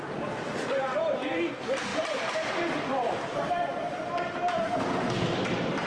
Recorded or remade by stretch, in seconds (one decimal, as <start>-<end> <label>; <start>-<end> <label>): 0.0-4.0 remade; 4.0-5.9 recorded